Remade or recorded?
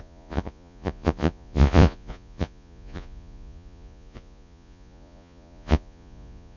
remade